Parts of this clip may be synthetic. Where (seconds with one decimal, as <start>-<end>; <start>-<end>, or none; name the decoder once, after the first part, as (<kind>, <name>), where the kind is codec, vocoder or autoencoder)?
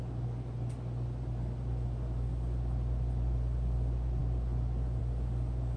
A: none